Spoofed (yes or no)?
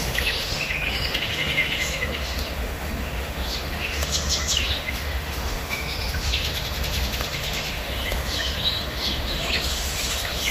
yes